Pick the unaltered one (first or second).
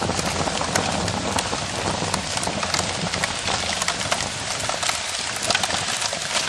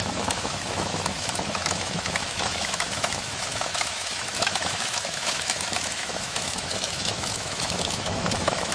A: first